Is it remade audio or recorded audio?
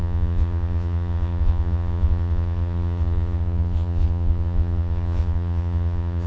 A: remade